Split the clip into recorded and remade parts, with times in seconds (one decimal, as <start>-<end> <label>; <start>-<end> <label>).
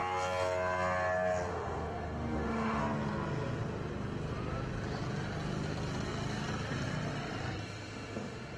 0.0-1.5 recorded; 1.5-2.8 remade; 2.8-7.6 recorded; 7.6-8.6 remade